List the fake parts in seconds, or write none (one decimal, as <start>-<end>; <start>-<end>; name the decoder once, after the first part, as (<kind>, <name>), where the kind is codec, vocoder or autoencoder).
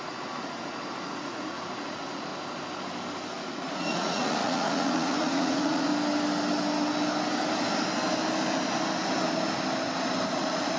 0.0-2.3 (vocoder, Vocos); 3.4-5.9; 10.3-10.8